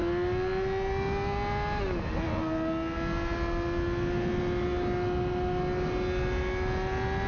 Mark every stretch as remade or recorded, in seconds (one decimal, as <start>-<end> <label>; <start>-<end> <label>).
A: 0.0-7.3 recorded